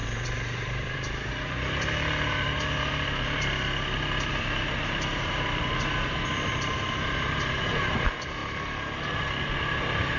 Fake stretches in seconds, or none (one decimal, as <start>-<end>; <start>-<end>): 0.0-8.4; 9.6-10.2